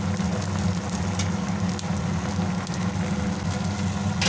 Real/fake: real